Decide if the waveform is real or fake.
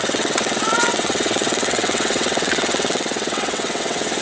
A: fake